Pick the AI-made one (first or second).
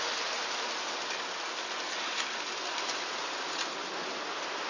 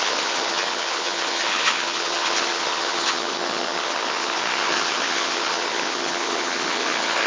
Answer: second